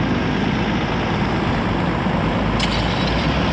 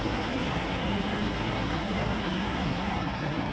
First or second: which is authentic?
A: first